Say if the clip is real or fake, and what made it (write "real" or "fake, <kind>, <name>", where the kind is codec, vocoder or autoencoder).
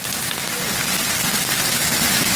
real